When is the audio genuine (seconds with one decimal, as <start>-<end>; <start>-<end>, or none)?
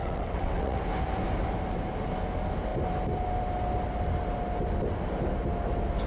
0.8-6.1